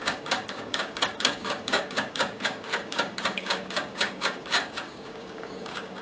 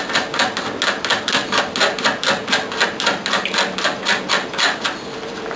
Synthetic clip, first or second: first